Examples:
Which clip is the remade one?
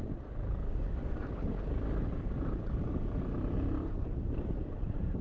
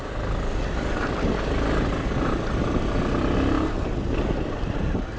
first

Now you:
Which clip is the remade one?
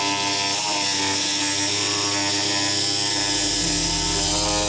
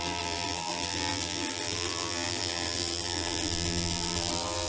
second